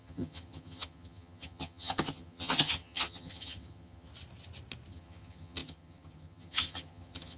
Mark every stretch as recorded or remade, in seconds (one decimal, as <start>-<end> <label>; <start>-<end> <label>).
0.0-4.1 remade; 4.1-4.9 recorded; 4.9-7.4 remade